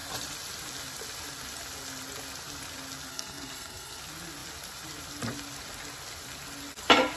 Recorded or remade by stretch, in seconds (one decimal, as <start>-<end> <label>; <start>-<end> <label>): 0.0-3.1 recorded; 3.1-4.0 remade; 4.0-7.2 recorded